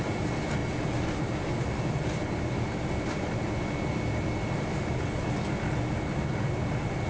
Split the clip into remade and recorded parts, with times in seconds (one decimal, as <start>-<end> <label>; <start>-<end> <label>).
0.0-7.1 recorded